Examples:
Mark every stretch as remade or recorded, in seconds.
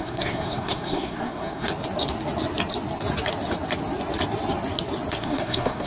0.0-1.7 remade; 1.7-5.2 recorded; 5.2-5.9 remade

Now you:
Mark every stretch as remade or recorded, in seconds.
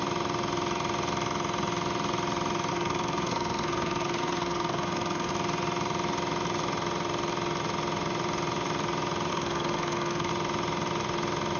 0.0-2.7 recorded; 2.7-5.3 remade; 5.3-9.3 recorded; 9.3-10.3 remade; 10.3-11.6 recorded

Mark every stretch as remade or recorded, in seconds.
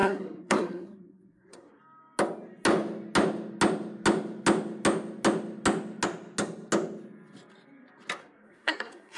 0.0-1.8 remade; 1.8-8.2 recorded; 8.2-9.2 remade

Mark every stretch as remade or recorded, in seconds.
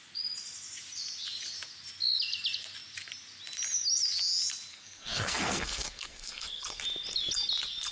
0.0-4.7 recorded; 4.7-6.8 remade; 6.8-7.9 recorded